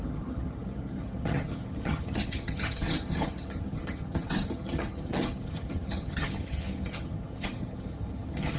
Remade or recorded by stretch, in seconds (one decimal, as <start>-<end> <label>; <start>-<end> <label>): 0.0-8.6 remade